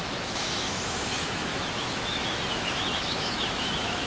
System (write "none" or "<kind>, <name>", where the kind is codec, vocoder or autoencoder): autoencoder, DAC-VAE